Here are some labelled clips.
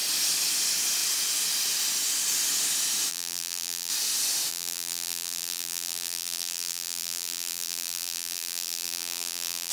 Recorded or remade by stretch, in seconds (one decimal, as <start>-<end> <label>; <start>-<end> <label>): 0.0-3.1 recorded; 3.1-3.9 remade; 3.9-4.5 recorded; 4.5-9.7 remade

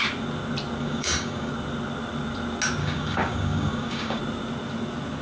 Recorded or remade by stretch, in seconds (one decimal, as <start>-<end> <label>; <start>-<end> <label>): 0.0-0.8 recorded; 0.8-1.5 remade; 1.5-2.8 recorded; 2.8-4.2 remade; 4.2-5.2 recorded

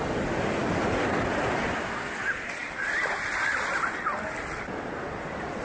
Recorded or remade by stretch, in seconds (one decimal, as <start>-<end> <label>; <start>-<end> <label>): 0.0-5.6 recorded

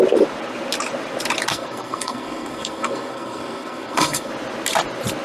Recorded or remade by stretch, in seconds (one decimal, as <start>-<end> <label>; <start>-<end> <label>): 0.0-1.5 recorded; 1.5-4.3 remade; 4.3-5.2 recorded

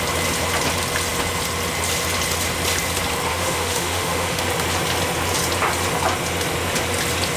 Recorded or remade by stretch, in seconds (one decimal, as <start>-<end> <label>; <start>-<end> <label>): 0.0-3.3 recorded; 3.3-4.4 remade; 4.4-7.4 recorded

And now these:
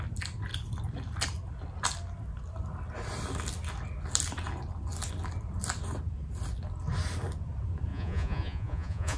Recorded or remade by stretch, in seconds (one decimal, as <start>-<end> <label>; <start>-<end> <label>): 0.0-7.9 recorded; 7.9-9.2 remade

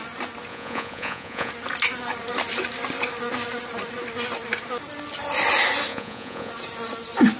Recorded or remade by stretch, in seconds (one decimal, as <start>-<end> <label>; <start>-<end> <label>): 0.0-0.5 recorded; 0.5-1.5 remade; 1.5-5.9 recorded; 5.9-6.5 remade; 6.5-7.4 recorded